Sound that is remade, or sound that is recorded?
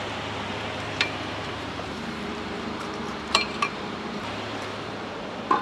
remade